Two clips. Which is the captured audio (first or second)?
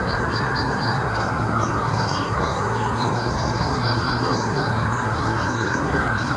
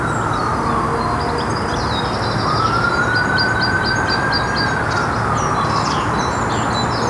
second